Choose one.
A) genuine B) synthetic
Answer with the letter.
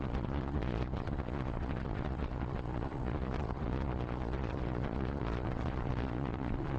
B